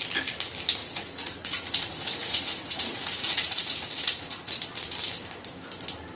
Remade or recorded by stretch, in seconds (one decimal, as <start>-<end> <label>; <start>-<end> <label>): 0.0-0.8 recorded; 0.8-4.5 remade; 4.5-6.2 recorded